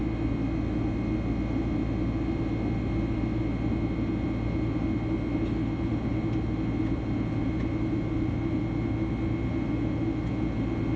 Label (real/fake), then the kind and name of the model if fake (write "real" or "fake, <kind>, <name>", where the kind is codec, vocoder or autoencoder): real